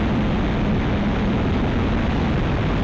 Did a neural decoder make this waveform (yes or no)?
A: no